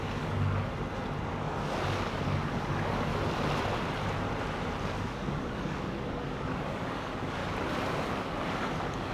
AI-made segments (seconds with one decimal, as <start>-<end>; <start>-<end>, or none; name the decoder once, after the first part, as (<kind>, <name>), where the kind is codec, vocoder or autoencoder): 0.0-0.7 (codec, DAC); 1.3-3.1; 4.8-7.4; 8.1-9.1